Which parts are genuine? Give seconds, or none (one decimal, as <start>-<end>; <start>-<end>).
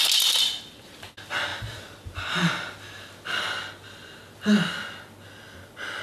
0.0-6.0